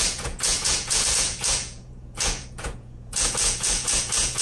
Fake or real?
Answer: fake